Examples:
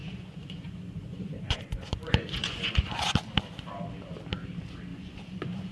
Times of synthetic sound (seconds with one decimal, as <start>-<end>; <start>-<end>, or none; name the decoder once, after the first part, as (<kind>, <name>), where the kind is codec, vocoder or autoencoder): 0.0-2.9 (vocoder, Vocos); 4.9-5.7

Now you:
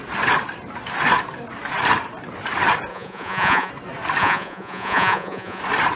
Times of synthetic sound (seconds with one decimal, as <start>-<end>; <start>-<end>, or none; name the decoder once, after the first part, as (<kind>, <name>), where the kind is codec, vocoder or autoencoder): 2.9-3.7 (vocoder, Vocos); 4.2-5.6

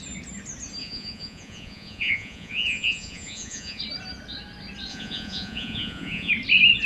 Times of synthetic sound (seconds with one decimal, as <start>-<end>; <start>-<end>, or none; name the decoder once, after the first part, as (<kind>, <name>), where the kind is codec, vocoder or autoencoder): 0.8-3.8 (vocoder, Vocos); 4.9-6.3

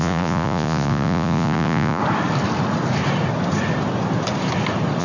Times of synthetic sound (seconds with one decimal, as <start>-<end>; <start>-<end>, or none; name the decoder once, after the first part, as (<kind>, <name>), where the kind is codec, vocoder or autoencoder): 0.0-2.0 (vocoder, Vocos)

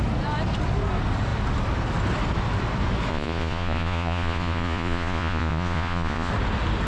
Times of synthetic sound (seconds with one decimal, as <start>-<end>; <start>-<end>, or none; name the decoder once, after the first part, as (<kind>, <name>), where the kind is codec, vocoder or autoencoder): 3.1-6.3 (vocoder, Vocos)

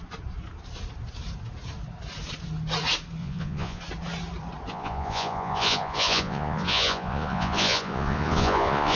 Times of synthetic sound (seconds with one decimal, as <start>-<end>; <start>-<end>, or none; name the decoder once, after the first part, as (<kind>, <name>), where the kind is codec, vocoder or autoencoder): 3.2-3.8 (vocoder, Vocos); 4.7-9.0

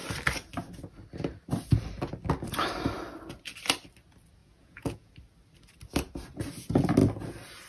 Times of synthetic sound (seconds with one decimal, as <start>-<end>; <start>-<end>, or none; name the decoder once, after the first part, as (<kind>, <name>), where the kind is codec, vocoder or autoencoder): 4.4-5.1 (vocoder, Vocos)